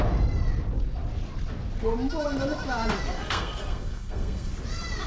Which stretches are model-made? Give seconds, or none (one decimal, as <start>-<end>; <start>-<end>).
3.1-4.5